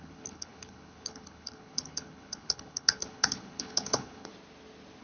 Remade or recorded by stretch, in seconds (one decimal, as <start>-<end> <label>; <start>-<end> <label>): 0.0-4.3 remade; 4.3-5.0 recorded